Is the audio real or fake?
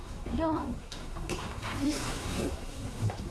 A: fake